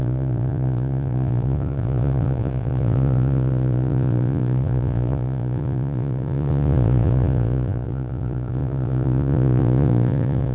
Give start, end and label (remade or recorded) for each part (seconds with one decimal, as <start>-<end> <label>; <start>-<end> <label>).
0.0-10.5 remade